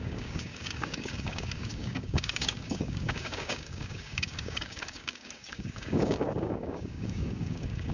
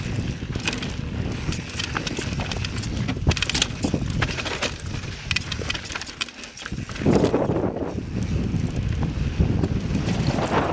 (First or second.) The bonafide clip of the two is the second